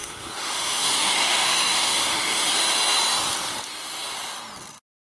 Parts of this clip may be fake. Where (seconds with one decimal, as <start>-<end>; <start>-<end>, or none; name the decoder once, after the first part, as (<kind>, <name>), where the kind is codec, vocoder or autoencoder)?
0.0-2.5 (autoencoder, DAC-VAE)